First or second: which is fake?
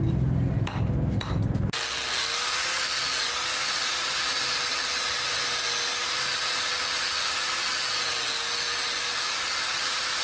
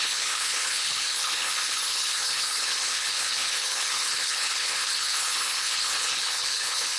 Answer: second